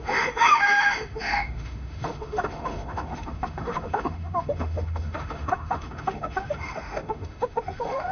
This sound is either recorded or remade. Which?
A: remade